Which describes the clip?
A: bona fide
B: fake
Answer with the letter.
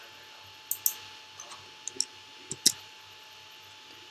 A